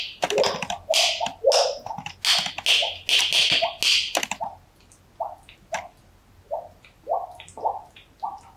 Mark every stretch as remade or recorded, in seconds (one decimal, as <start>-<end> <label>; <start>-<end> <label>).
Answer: 0.0-7.1 recorded; 7.1-8.6 remade